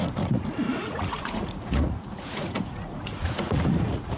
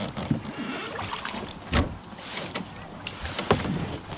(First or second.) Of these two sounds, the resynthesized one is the first